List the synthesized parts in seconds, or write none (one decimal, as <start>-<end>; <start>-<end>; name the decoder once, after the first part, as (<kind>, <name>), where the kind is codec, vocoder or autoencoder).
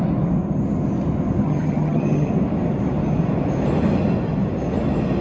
1.4-2.3 (vocoder, HiFi-GAN)